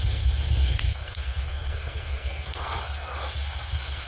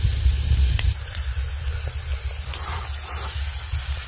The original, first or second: second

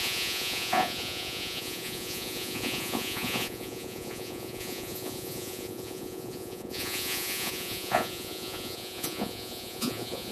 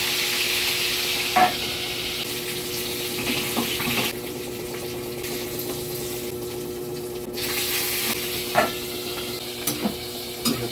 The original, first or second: second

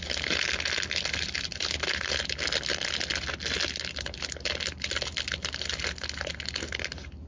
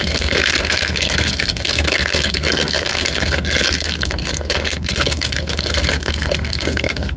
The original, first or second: first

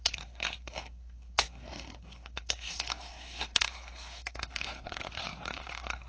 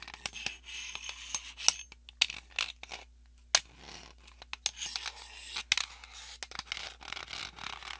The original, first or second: second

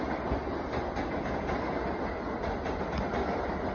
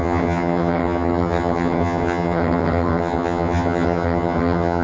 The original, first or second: first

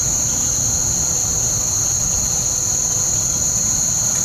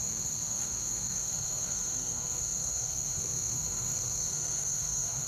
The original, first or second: first